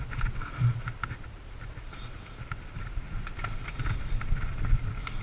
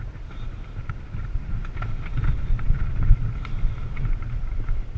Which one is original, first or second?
first